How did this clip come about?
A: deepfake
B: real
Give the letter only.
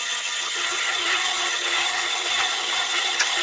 A